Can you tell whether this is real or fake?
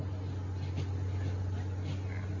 real